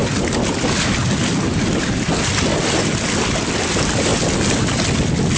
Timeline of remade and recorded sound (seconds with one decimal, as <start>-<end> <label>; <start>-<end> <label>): 0.0-5.4 recorded